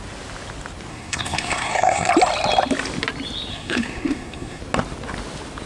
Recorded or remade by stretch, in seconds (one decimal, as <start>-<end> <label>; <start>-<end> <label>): 0.0-0.9 recorded; 0.9-2.1 remade; 2.1-3.5 recorded; 3.5-4.6 remade; 4.6-5.7 recorded